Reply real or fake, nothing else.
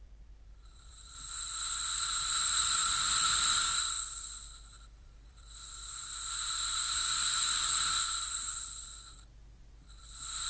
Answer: fake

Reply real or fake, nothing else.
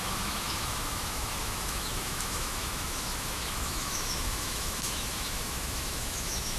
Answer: fake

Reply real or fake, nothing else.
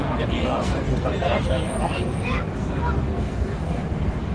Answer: fake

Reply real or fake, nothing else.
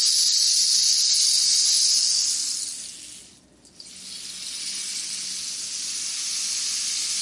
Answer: real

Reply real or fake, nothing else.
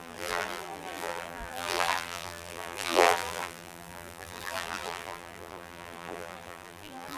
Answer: fake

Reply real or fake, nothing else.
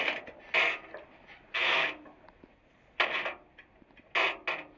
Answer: real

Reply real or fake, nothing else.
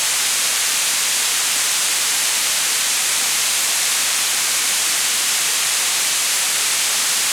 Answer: fake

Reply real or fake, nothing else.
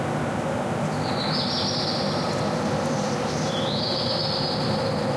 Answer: real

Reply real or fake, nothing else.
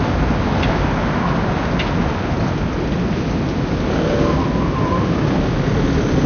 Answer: real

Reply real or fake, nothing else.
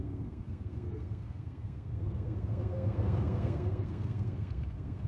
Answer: fake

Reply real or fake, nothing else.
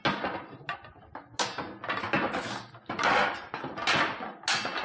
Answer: real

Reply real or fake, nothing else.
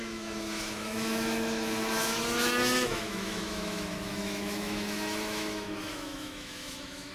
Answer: fake